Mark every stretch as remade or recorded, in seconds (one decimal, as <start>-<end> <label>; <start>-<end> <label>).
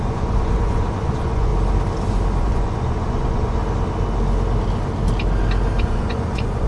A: 0.0-1.5 remade; 1.5-2.4 recorded; 2.4-3.6 remade; 3.6-5.8 recorded; 5.8-6.7 remade